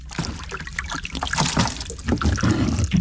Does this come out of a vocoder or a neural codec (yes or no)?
no